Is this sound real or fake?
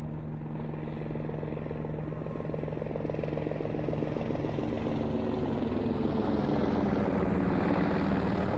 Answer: real